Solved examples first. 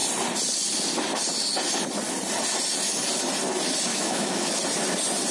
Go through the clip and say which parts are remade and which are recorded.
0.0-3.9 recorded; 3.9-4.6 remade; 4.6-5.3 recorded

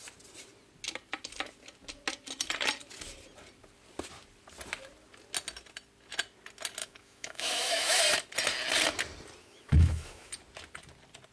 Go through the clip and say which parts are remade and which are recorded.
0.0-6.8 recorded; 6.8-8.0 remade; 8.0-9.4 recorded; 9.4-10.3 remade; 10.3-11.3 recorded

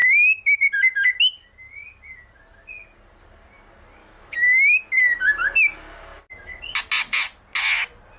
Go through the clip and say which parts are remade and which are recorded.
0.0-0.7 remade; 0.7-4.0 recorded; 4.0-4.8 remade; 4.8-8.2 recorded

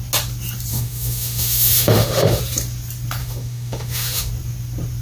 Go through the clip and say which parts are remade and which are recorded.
0.0-0.7 recorded; 0.7-2.4 remade; 2.4-3.2 recorded; 3.2-4.3 remade; 4.3-5.0 recorded

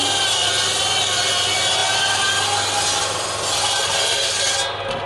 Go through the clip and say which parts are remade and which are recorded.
0.0-5.1 recorded

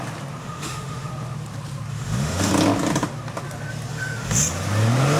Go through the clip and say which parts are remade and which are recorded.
0.0-0.4 recorded; 0.4-1.1 remade; 1.1-1.9 recorded; 1.9-2.5 remade; 2.5-3.9 recorded; 3.9-4.4 remade; 4.4-5.2 recorded

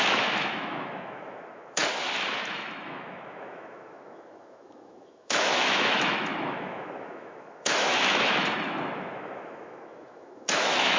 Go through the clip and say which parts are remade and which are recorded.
0.0-1.8 remade; 1.8-2.5 recorded; 2.5-11.0 remade

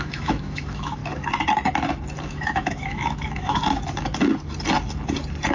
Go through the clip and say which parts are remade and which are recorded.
0.0-1.0 remade; 1.0-2.2 recorded; 2.2-3.6 remade; 3.6-5.5 recorded